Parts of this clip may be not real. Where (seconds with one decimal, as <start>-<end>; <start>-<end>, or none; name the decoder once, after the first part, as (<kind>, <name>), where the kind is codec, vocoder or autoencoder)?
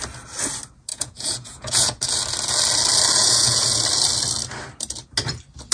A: 0.9-2.0 (vocoder, Vocos); 3.2-3.8